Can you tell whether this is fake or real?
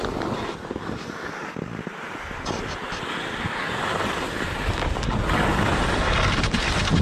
real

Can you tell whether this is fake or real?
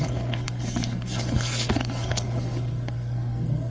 fake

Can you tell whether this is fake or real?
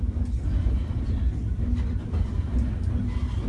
real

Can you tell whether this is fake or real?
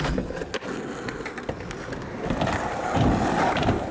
real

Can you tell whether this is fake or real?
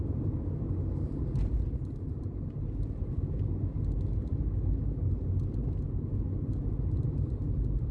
real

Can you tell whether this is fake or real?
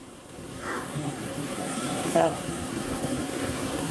fake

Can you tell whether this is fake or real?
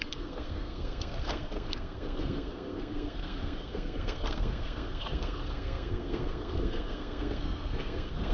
fake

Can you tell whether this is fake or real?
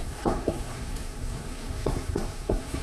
fake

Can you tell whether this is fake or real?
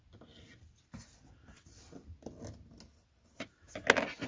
real